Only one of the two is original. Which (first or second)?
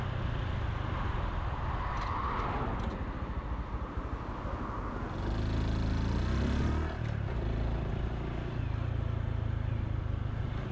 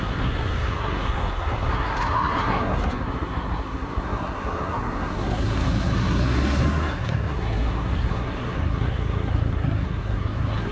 first